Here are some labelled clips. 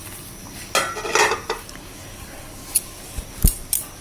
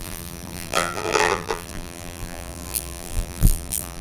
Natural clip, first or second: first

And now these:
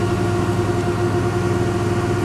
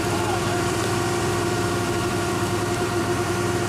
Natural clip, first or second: first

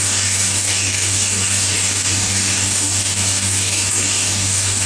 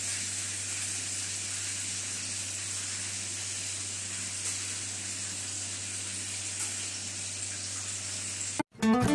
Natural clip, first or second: second